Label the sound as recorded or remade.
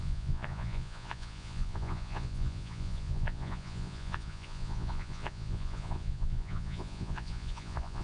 remade